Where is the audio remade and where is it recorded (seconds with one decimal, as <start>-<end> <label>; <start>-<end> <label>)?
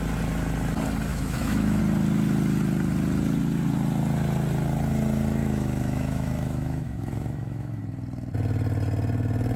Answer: 0.0-1.1 recorded; 1.1-1.8 remade; 1.8-5.4 recorded; 5.4-7.8 remade; 7.8-9.6 recorded